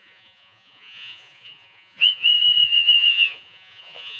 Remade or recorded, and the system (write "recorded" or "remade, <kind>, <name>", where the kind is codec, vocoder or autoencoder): remade, vocoder, Vocos